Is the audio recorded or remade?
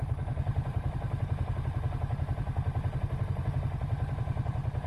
recorded